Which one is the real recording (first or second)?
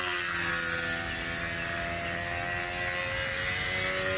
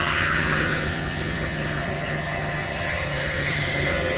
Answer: first